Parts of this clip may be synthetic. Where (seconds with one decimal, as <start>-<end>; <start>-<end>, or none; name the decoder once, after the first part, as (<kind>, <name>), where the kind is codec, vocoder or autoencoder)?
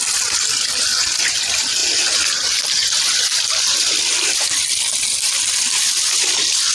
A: 0.0-6.7 (vocoder, BigVGAN v2)